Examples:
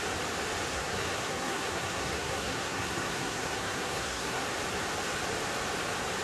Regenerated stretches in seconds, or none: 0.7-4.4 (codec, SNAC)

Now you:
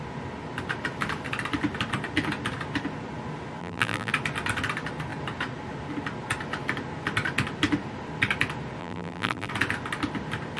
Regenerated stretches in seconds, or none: 3.6-4.1 (vocoder, BigVGAN v2); 8.8-9.5

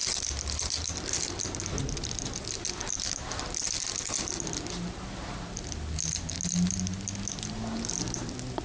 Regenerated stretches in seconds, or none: none

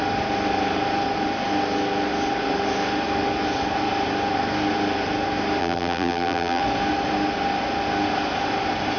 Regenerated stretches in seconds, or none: 5.6-6.6 (vocoder, BigVGAN v2)

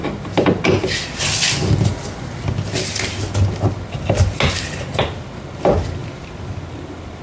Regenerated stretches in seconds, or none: 6.0-7.2 (vocoder, BigVGAN v2)

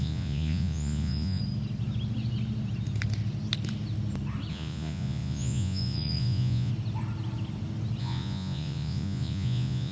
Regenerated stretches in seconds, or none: 0.0-1.4 (vocoder, Vocos); 4.5-6.7; 8.0-9.9